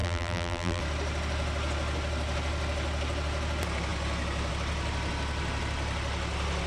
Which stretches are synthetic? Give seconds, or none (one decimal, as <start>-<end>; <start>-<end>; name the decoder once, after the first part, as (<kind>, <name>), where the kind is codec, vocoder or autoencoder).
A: 0.0-0.8 (vocoder, BigVGAN v2)